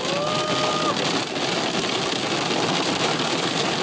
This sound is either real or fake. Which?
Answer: real